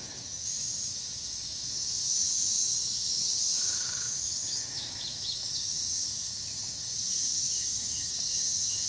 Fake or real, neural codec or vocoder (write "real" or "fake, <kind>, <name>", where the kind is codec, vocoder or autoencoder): fake, autoencoder, DAC-VAE